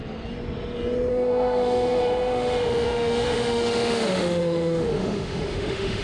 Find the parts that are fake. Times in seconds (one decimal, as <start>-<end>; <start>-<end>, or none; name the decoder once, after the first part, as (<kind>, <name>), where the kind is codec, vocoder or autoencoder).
1.1-6.0 (autoencoder, DAC-VAE)